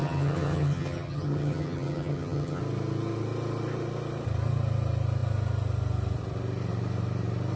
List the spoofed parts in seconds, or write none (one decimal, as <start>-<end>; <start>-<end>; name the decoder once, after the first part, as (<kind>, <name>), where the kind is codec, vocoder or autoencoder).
0.0-2.6 (vocoder, HiFi-GAN)